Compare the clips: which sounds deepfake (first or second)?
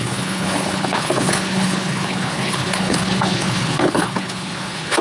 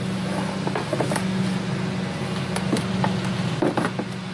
first